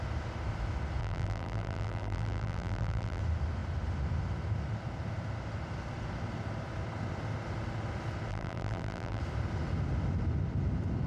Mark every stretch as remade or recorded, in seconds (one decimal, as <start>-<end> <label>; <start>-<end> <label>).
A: 0.0-1.0 recorded; 1.0-3.2 remade; 3.2-8.3 recorded; 8.3-9.2 remade; 9.2-11.1 recorded